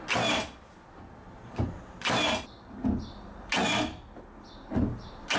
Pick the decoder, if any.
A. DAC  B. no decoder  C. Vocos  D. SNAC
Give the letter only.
B